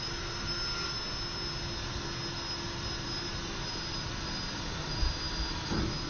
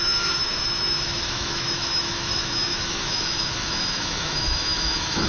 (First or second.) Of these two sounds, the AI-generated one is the second